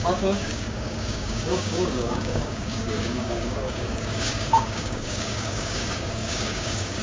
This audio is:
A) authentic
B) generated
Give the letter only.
B